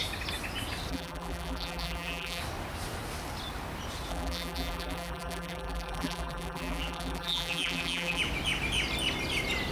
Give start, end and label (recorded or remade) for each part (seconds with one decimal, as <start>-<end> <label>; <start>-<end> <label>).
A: 0.0-0.9 recorded; 0.9-2.4 remade; 2.4-4.1 recorded; 4.1-8.2 remade; 8.2-9.7 recorded